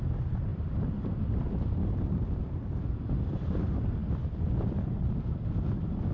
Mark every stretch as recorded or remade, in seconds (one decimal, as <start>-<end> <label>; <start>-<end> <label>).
0.0-0.5 recorded; 0.5-2.5 remade; 2.5-6.1 recorded